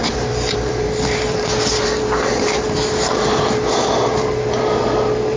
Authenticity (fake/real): fake